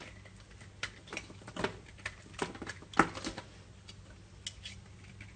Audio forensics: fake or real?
real